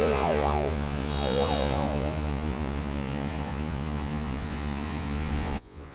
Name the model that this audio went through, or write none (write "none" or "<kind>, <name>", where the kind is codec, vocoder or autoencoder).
vocoder, Vocos